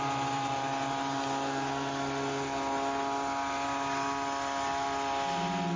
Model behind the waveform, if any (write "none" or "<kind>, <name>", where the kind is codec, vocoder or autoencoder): none